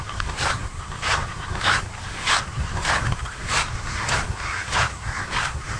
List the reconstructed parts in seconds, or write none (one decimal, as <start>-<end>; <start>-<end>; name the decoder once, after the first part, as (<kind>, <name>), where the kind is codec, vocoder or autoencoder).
0.0-5.8 (codec, SNAC)